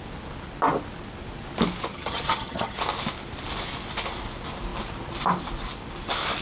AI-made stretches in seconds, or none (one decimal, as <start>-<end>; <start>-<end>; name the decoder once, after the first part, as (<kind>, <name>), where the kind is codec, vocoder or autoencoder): 1.9-2.8 (vocoder, HiFi-GAN)